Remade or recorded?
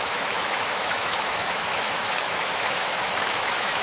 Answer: remade